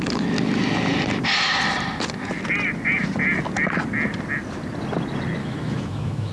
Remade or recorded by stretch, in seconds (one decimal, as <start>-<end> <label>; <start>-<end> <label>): 0.0-5.4 recorded; 5.4-6.3 remade